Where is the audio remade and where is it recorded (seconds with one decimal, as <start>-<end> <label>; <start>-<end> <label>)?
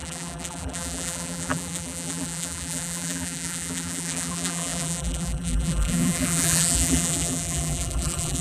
0.0-8.4 remade